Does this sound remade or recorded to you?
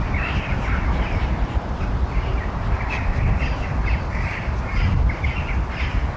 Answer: recorded